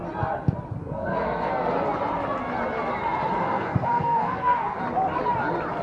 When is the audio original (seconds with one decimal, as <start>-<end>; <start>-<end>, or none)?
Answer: 0.0-0.8; 1.5-3.4; 4.8-5.8